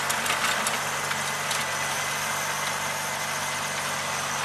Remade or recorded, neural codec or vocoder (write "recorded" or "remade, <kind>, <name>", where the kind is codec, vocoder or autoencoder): recorded